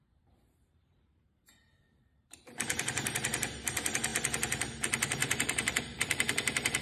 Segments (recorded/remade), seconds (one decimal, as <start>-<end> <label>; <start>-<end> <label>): 0.0-4.1 remade; 4.1-4.8 recorded; 4.8-6.8 remade